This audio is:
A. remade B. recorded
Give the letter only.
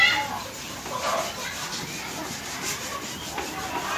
B